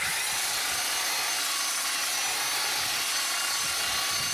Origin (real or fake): real